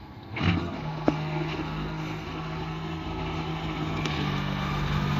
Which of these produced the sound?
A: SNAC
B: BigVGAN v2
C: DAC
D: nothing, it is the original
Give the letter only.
A